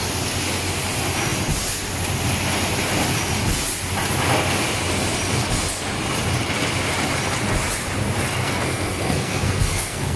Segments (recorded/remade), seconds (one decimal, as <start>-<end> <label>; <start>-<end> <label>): 0.0-8.4 recorded; 8.4-10.2 remade